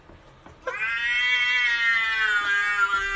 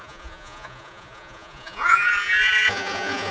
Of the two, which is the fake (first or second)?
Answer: second